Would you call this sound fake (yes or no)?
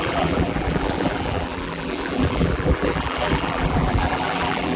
yes